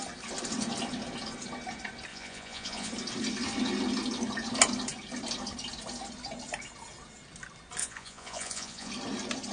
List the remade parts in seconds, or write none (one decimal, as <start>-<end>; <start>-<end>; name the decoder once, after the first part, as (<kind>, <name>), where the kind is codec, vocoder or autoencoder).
2.1-2.9 (vocoder, Vocos); 7.8-8.9